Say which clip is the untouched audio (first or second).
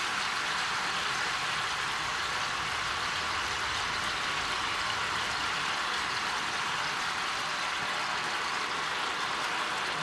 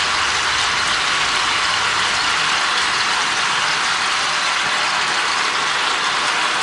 second